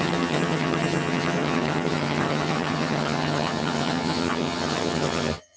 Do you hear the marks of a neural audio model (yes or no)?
yes